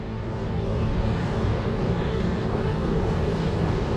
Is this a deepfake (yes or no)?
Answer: yes